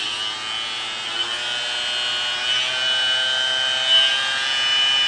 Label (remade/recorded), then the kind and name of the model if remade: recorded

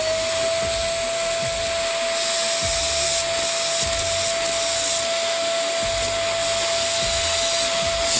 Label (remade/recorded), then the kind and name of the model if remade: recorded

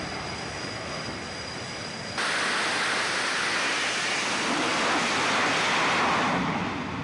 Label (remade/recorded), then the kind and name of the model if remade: recorded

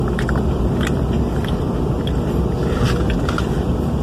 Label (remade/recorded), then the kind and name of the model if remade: remade, vocoder, BigVGAN v2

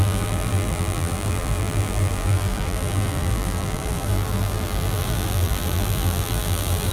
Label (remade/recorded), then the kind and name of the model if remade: remade, vocoder, BigVGAN v2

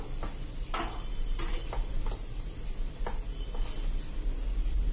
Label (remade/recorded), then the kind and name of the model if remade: recorded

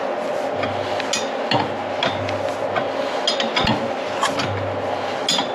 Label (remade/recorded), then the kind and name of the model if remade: recorded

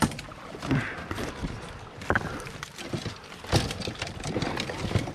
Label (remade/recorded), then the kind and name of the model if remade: remade, vocoder, BigVGAN v2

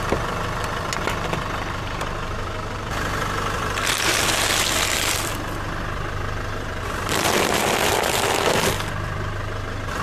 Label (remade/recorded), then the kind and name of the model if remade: remade, vocoder, BigVGAN v2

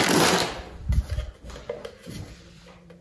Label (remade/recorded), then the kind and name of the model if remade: remade, vocoder, BigVGAN v2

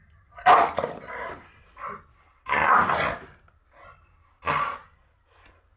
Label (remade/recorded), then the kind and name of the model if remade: recorded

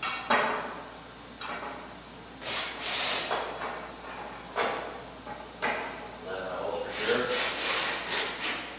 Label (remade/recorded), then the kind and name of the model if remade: recorded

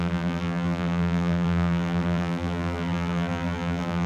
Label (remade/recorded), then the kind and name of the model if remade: remade, vocoder, BigVGAN v2